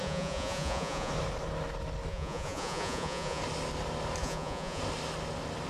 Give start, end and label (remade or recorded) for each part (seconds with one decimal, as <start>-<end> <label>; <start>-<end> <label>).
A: 0.0-1.1 remade; 1.1-2.1 recorded; 2.1-3.4 remade; 3.4-4.2 recorded; 4.2-4.8 remade; 4.8-5.7 recorded